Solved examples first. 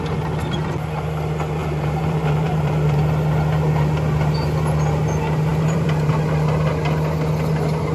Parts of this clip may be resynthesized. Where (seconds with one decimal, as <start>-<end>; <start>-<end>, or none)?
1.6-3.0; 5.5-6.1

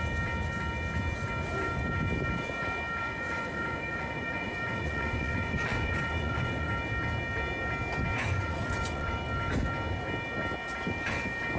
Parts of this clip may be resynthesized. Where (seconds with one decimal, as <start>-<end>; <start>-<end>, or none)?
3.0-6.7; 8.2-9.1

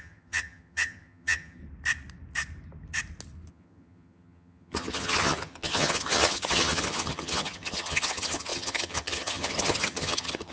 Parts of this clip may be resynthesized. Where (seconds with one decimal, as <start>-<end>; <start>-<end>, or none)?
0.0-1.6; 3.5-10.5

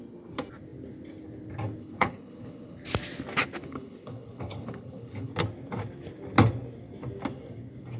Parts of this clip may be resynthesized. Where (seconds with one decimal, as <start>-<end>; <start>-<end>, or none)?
1.8-2.8; 3.6-5.3

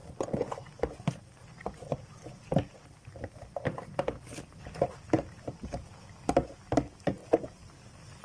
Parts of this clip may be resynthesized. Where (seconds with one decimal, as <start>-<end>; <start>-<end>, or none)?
7.2-8.2

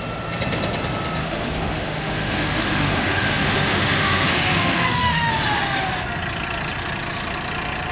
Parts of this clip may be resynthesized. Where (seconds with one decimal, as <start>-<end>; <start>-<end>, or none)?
1.2-5.3

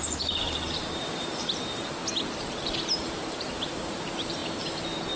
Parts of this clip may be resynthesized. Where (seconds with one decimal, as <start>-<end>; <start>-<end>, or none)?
0.0-2.0; 3.1-4.4